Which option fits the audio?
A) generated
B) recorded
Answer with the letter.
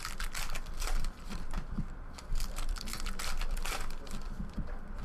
A